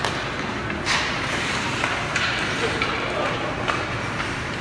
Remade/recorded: remade